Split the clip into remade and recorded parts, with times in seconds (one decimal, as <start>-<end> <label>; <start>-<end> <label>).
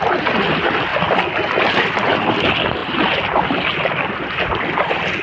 0.0-5.2 recorded